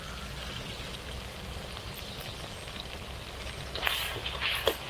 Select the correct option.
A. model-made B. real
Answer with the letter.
B